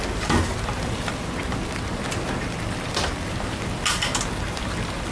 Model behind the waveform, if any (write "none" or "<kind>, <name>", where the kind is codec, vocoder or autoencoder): none